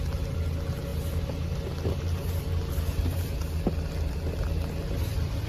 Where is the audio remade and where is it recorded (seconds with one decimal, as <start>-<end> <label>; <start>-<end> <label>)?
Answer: 0.0-5.5 recorded